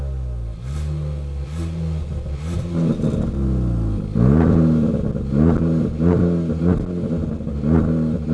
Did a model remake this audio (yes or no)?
no